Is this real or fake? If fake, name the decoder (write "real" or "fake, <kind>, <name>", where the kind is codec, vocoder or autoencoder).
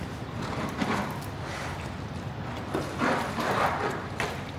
real